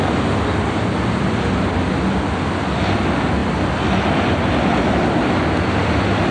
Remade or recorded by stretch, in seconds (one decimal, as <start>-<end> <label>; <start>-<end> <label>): 0.0-6.3 recorded